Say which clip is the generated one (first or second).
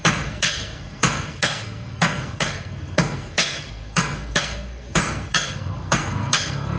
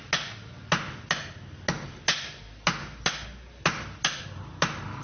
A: first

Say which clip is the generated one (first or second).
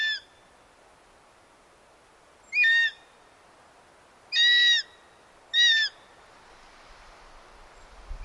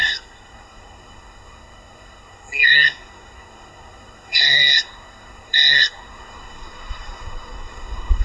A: second